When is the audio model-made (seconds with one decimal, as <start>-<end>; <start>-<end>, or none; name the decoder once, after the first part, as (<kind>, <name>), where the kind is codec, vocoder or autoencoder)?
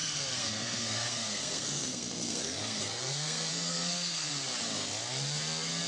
0.0-4.3 (codec, SNAC)